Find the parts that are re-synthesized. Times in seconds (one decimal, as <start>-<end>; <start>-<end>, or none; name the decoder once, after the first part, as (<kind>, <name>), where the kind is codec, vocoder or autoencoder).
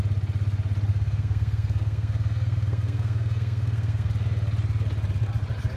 0.9-4.1 (codec, SNAC)